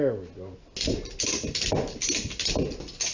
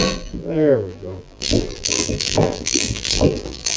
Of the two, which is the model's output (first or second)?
second